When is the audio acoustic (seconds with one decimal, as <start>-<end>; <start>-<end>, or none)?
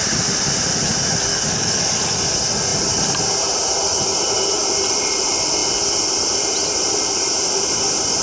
0.0-1.3; 2.1-8.2